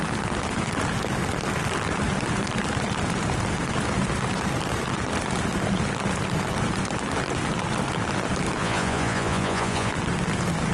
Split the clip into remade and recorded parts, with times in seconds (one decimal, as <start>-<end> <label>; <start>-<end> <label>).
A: 0.0-8.6 recorded; 8.6-9.9 remade; 9.9-10.7 recorded